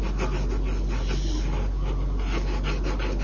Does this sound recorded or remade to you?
recorded